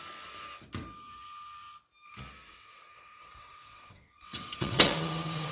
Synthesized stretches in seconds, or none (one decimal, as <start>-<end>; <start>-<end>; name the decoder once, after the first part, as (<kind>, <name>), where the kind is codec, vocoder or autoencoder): 2.5-5.5 (vocoder, WaveNeXt)